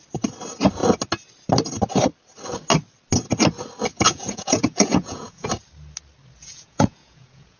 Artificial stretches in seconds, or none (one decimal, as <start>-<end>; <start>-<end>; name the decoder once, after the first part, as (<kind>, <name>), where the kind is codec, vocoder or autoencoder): 3.9-5.5 (vocoder, Vocos); 6.4-7.6